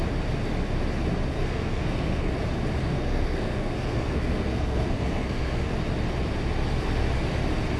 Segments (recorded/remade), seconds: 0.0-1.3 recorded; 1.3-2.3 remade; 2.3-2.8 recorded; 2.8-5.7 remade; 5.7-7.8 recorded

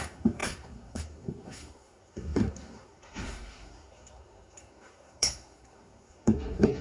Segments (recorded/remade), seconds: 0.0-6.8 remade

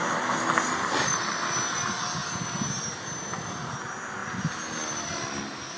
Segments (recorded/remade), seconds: 0.0-5.8 recorded